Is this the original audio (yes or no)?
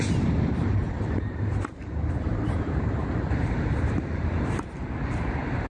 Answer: no